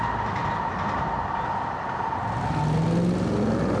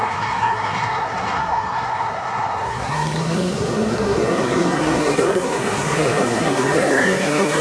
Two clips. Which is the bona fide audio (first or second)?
first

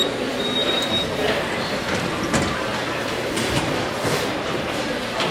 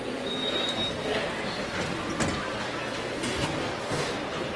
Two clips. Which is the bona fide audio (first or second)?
second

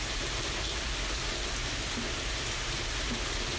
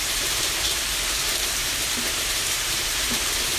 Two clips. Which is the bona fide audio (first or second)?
first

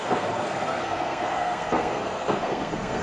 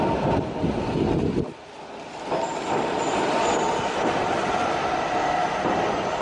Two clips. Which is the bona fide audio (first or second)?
second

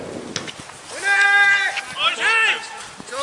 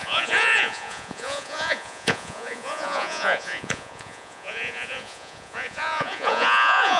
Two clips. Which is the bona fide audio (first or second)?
first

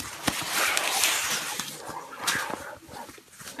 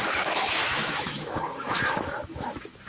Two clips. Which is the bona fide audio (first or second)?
first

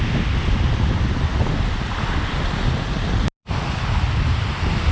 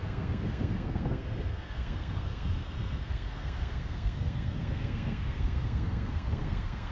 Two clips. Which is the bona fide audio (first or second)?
first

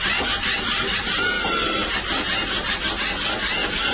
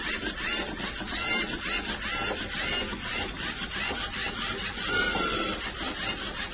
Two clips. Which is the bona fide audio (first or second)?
first